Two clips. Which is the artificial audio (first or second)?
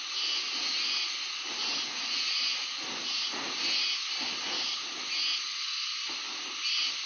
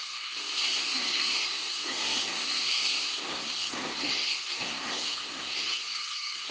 second